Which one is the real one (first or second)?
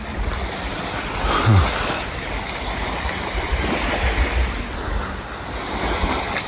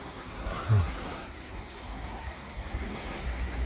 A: first